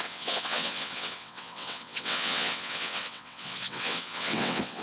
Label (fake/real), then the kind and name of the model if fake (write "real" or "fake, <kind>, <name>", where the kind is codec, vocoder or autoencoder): fake, vocoder, WaveNeXt